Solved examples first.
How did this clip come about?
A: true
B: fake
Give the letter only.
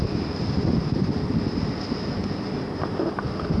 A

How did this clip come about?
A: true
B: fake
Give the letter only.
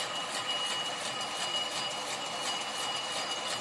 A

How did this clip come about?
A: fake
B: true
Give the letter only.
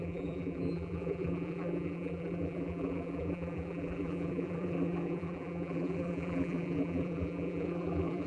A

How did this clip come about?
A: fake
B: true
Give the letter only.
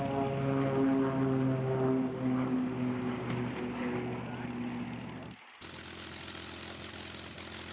B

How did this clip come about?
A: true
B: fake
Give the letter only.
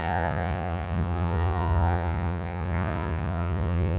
B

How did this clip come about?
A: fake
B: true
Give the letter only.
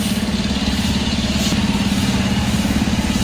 B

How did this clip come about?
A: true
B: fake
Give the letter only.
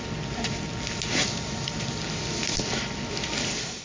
A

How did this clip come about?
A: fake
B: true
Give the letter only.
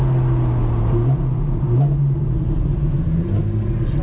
B